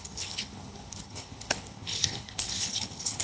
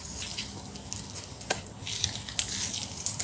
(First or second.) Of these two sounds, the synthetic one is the first